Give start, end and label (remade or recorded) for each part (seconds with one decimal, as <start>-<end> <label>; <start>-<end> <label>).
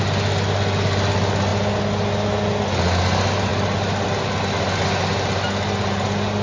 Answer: 0.0-6.4 recorded